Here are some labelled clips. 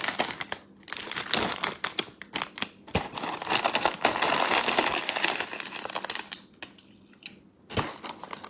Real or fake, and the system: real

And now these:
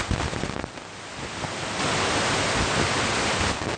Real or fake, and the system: real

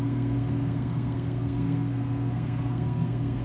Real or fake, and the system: fake, codec, SNAC